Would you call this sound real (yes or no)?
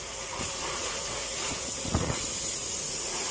no